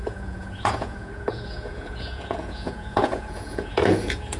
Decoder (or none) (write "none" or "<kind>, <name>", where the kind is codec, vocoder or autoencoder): vocoder, Vocos